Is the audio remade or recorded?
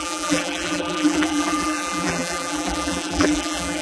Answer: remade